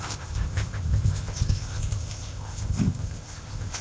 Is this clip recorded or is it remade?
remade